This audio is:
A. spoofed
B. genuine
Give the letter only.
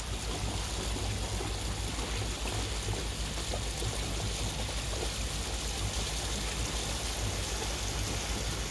B